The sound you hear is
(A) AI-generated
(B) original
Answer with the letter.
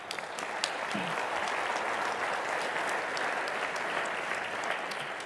B